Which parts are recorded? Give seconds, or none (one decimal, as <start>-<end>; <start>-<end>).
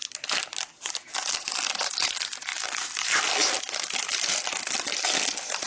0.0-2.5; 3.1-5.7